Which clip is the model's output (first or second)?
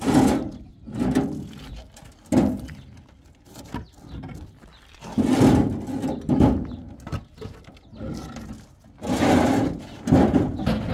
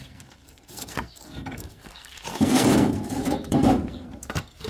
second